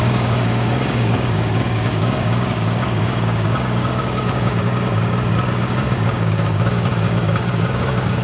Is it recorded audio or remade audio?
remade